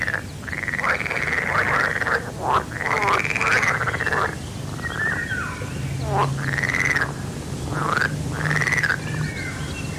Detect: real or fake real